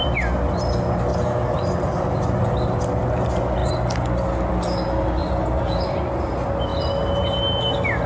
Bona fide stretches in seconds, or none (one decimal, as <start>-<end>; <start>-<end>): 0.0-3.6; 4.5-5.2; 6.3-8.1